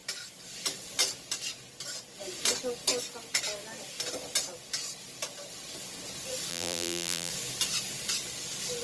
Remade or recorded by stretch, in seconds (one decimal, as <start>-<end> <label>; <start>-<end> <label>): 0.0-6.5 recorded; 6.5-7.3 remade; 7.3-8.8 recorded